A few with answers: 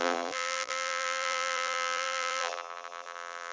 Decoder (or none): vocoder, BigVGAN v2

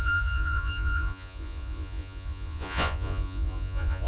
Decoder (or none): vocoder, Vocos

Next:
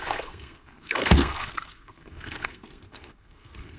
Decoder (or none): codec, SNAC